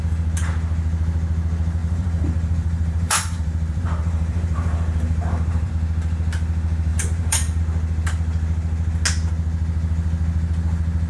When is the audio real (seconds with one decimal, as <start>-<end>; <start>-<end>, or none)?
0.0-1.8; 5.7-6.9; 7.6-11.1